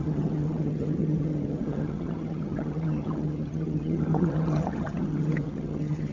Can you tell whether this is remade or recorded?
remade